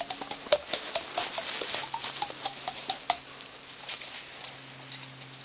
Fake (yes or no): no